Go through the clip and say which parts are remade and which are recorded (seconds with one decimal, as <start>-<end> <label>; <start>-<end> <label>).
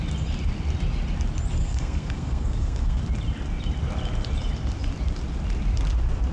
0.0-1.6 recorded; 1.6-3.0 remade; 3.0-6.3 recorded